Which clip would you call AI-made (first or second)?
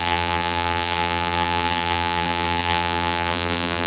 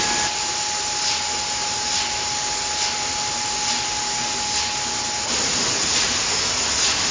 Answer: first